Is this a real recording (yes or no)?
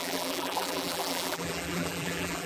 no